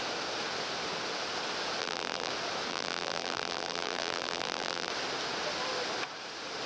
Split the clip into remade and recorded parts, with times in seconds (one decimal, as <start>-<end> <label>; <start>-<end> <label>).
0.0-1.8 recorded; 1.8-2.3 remade; 2.3-2.7 recorded; 2.7-4.9 remade; 4.9-6.7 recorded